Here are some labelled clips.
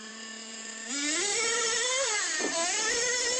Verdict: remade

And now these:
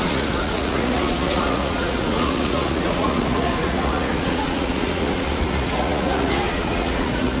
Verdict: remade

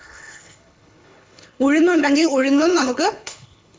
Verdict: remade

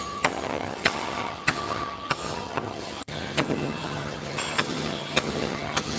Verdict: remade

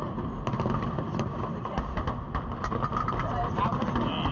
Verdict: recorded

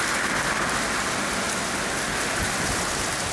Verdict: recorded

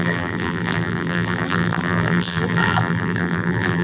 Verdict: remade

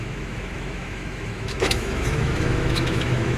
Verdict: remade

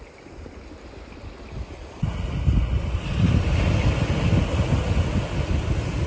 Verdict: recorded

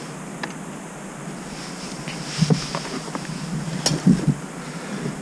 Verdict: recorded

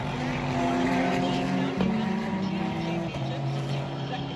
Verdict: recorded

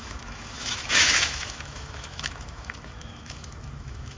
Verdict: remade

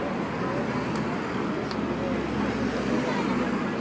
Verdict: recorded